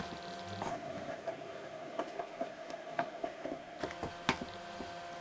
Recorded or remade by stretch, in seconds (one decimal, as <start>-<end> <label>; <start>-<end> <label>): 0.0-0.7 recorded; 0.7-3.8 remade; 3.8-5.2 recorded